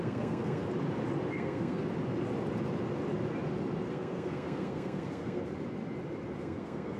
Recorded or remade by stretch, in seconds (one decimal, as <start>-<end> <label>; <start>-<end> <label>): 0.0-0.6 remade; 0.6-1.3 recorded; 1.3-1.8 remade; 1.8-3.9 recorded; 3.9-5.4 remade; 5.4-6.4 recorded; 6.4-7.0 remade